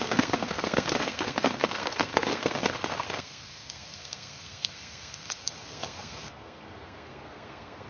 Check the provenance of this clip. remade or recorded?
remade